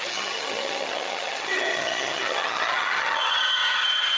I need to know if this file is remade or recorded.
remade